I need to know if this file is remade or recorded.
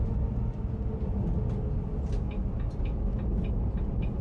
recorded